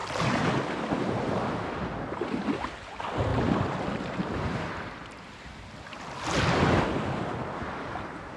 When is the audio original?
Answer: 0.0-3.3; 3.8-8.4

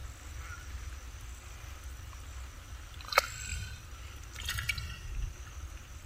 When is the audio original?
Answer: 0.0-6.1

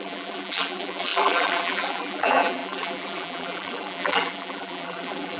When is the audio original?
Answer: none

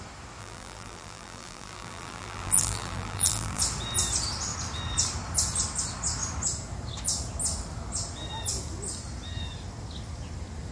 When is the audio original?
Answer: 0.0-0.4; 3.6-10.7